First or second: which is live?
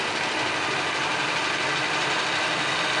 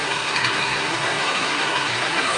first